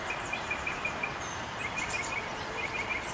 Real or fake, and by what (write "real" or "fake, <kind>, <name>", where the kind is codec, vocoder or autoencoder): fake, vocoder, BigVGAN v2